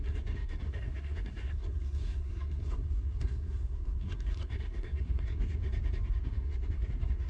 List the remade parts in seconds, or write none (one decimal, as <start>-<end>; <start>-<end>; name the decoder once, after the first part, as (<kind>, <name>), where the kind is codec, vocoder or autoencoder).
0.0-5.6 (codec, SNAC); 6.2-7.3